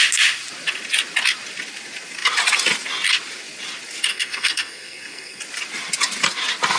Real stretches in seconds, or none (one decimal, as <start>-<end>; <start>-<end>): 0.0-4.1; 5.4-6.8